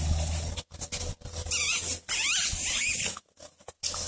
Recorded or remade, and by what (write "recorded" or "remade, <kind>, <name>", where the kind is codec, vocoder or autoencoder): recorded